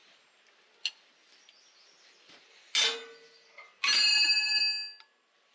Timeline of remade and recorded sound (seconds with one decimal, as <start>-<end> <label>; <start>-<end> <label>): 0.0-5.5 recorded

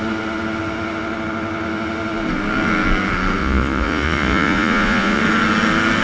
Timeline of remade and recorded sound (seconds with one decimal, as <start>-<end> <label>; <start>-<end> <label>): 0.0-3.4 recorded; 3.4-5.2 remade; 5.2-6.0 recorded

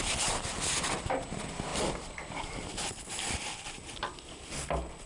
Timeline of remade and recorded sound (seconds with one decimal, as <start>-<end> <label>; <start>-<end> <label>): 0.0-1.7 recorded; 1.7-3.8 remade; 3.8-5.1 recorded

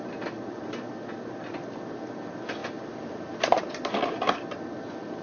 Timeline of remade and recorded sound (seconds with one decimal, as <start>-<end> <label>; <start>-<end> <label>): 0.0-5.2 recorded

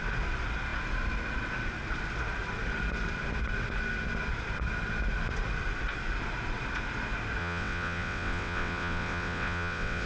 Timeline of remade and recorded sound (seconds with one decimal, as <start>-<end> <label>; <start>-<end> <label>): 0.0-7.4 recorded; 7.4-10.1 remade

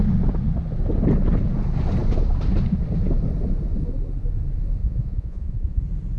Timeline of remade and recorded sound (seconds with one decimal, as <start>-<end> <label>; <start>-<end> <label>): 0.0-4.8 recorded; 4.8-5.8 remade; 5.8-6.2 recorded

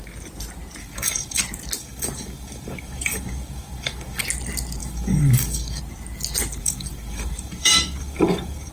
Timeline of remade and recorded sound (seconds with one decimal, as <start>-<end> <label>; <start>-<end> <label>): 0.0-0.8 recorded; 0.8-1.4 remade; 1.4-1.8 recorded; 1.8-4.2 remade; 4.2-4.8 recorded; 4.8-5.8 remade; 5.8-6.6 recorded; 6.6-8.7 remade

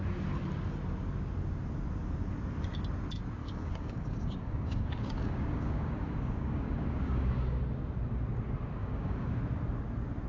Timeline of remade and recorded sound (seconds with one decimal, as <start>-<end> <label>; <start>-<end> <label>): 0.0-3.4 recorded; 3.4-7.6 remade; 7.6-8.8 recorded; 8.8-9.4 remade; 9.4-10.3 recorded